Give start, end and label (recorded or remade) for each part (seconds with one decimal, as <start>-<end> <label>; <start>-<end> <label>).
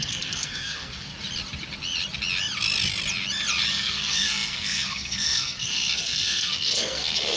0.0-1.1 remade; 1.1-3.7 recorded; 3.7-7.4 remade